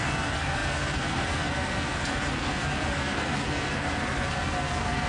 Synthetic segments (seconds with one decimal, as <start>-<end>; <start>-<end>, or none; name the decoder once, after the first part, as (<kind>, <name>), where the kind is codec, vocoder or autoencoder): 0.0-5.1 (codec, SNAC)